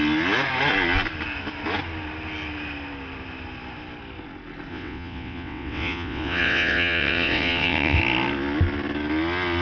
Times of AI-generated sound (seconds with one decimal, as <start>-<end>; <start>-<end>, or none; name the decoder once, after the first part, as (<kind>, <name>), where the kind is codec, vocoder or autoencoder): 4.7-8.0 (vocoder, WaveNeXt)